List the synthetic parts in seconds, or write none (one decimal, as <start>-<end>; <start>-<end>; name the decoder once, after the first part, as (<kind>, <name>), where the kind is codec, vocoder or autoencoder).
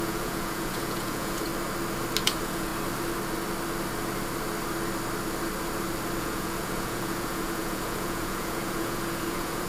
0.0-1.5 (vocoder, Vocos); 2.2-2.7; 6.2-9.7